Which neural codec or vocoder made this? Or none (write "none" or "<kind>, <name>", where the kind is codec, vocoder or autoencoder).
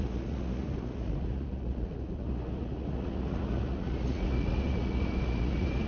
vocoder, Vocos